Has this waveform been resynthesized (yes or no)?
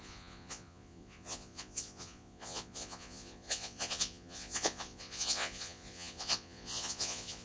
yes